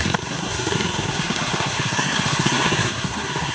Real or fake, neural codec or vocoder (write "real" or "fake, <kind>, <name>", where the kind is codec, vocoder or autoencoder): fake, codec, SNAC